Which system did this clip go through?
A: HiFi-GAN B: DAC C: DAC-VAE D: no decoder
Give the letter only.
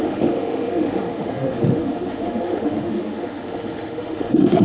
C